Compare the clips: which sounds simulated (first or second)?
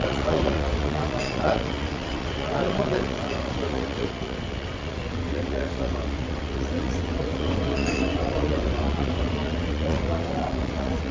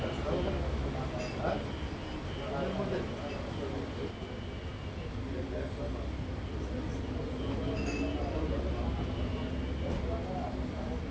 first